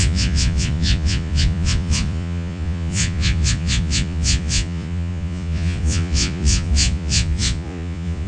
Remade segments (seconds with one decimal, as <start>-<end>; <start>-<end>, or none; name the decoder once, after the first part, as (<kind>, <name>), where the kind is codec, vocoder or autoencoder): 0.0-8.3 (vocoder, Vocos)